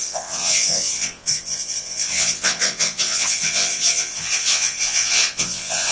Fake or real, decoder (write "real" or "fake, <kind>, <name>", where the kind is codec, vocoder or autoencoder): fake, vocoder, WaveNeXt